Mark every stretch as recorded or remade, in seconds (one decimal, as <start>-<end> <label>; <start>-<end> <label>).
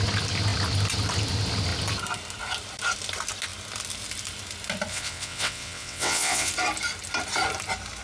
0.0-4.9 recorded; 4.9-6.5 remade; 6.5-8.0 recorded